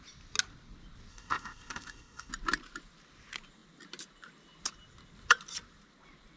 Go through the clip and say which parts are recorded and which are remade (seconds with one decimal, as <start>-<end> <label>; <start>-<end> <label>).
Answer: 0.0-1.1 recorded; 1.1-2.3 remade; 2.3-6.4 recorded